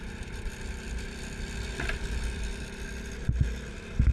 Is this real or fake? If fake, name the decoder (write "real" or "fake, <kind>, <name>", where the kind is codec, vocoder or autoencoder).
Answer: real